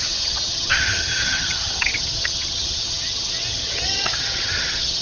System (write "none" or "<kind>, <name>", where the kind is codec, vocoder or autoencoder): vocoder, HiFi-GAN